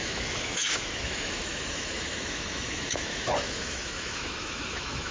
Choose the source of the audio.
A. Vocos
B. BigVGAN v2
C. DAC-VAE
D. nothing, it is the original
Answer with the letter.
C